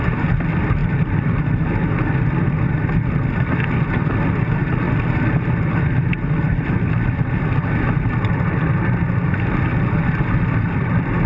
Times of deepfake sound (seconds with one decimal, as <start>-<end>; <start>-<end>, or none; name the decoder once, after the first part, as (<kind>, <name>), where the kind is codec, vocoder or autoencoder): 0.8-1.6 (vocoder, BigVGAN v2); 9.7-11.3